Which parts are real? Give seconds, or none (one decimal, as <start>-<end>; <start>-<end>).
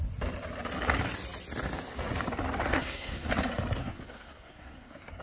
0.0-2.7; 3.3-3.8